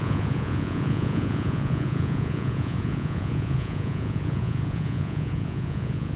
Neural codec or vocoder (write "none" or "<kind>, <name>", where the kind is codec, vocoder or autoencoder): vocoder, Vocos